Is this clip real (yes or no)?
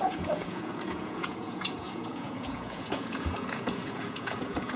no